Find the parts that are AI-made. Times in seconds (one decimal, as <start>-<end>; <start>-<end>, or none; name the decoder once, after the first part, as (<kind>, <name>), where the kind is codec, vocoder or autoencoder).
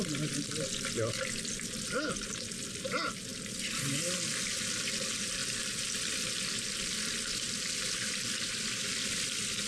none